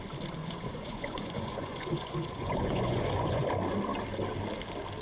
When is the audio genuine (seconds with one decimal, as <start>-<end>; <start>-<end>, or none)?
0.0-0.4; 3.4-5.0